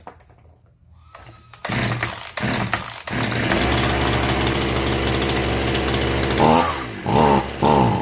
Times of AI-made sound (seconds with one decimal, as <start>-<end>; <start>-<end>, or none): none